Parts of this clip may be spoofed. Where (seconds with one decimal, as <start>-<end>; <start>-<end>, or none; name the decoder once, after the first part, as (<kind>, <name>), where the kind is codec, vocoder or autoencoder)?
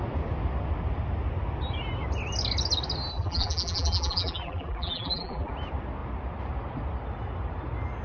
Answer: 3.1-5.5 (vocoder, BigVGAN v2)